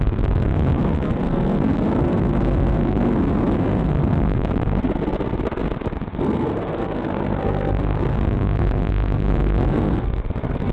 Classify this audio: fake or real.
fake